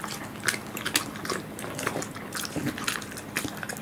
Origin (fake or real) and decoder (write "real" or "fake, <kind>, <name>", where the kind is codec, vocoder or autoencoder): real